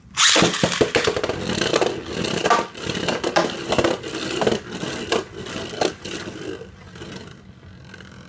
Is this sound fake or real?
real